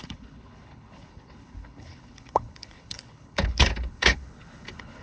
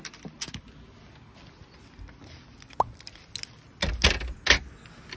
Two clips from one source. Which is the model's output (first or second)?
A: first